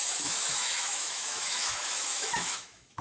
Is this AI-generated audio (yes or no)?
yes